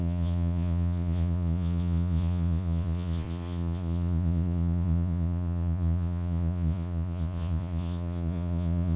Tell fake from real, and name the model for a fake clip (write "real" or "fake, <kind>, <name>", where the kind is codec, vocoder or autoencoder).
fake, vocoder, Vocos